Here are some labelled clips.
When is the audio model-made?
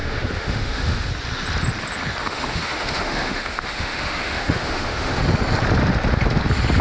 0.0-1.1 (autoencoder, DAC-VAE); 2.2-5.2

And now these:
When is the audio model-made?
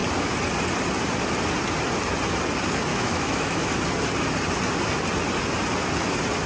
2.9-3.7 (autoencoder, DAC-VAE)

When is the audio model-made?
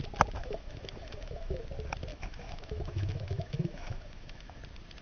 0.4-1.6 (autoencoder, DAC-VAE); 2.1-4.6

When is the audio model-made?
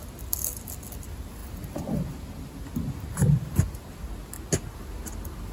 none